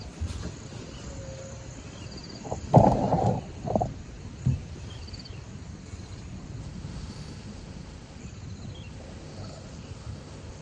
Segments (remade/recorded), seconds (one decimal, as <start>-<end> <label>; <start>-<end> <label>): 0.0-6.6 recorded; 6.6-8.2 remade; 8.2-8.9 recorded; 8.9-10.6 remade